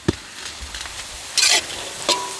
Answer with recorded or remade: recorded